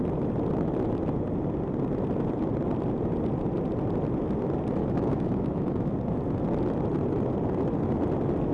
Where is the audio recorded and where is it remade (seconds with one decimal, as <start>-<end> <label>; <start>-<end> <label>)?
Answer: 0.0-4.8 recorded; 4.8-5.9 remade; 5.9-8.5 recorded